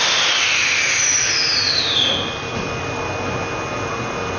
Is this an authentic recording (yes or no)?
yes